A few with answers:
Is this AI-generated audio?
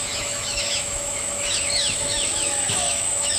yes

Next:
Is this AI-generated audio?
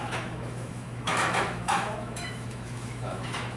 yes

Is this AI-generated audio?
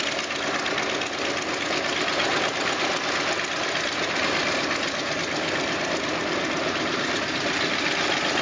no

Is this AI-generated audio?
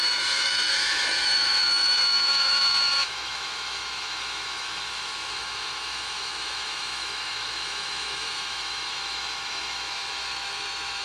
yes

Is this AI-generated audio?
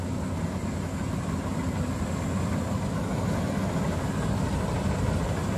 no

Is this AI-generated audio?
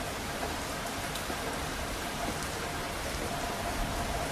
no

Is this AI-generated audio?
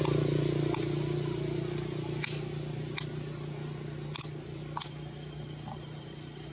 no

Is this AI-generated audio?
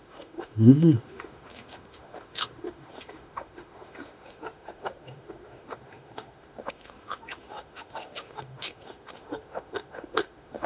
yes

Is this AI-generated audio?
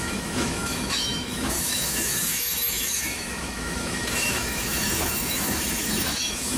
yes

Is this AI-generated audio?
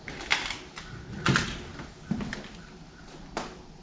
no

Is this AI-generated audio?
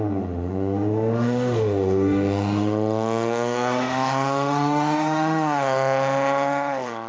yes